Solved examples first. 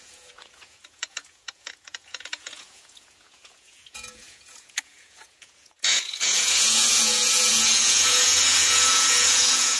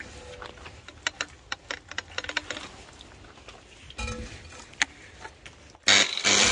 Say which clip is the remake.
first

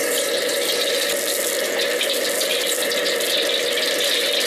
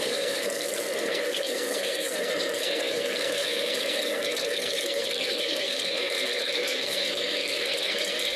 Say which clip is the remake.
second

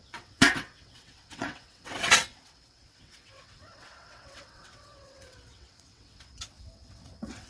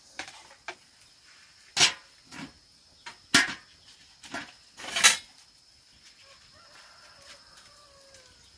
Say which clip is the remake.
first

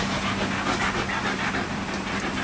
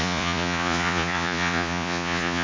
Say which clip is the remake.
second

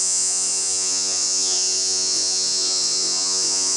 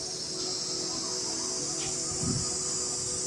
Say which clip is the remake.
first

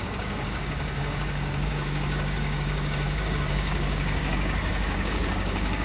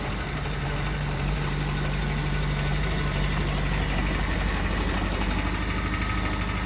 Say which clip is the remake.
first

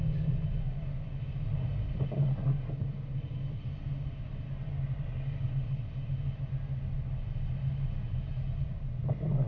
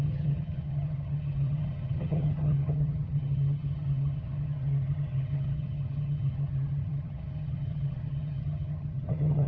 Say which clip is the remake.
second